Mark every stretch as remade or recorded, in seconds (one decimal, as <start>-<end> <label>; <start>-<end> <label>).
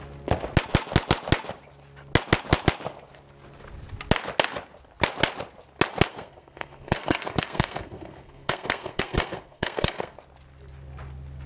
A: 0.0-6.1 recorded; 6.1-10.2 remade; 10.2-11.5 recorded